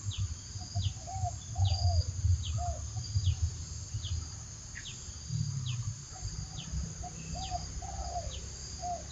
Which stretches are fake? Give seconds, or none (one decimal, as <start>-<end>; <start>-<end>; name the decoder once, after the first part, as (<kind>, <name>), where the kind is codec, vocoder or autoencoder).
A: 5.8-7.0 (vocoder, BigVGAN v2)